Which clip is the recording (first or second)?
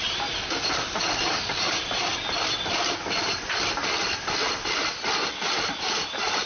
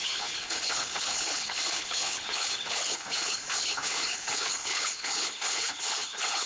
first